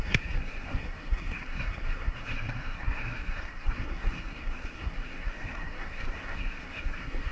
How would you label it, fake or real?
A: fake